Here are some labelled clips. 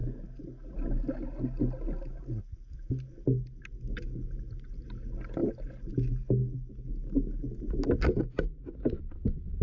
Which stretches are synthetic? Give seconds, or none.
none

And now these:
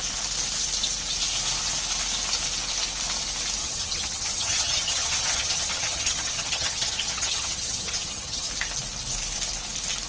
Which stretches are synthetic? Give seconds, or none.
3.6-8.5 (vocoder, HiFi-GAN)

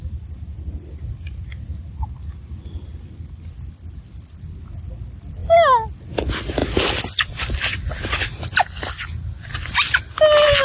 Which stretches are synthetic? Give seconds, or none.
none